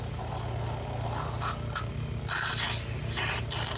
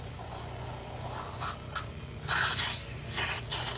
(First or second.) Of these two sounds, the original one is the first